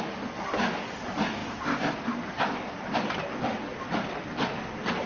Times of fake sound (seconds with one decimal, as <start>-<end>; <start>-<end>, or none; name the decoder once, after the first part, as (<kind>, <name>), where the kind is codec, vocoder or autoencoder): none